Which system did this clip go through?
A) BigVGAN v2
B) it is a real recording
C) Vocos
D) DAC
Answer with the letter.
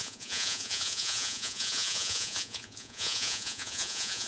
C